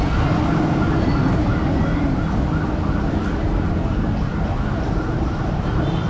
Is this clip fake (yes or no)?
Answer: no